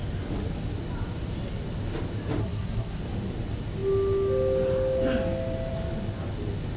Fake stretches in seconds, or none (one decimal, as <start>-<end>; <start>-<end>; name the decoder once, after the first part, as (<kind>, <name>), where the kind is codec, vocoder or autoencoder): 2.4-3.0 (codec, SNAC)